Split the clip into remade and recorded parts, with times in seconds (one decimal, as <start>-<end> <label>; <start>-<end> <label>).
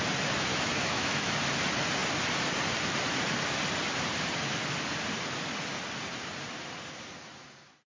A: 0.0-0.5 recorded; 0.5-1.3 remade; 1.3-8.0 recorded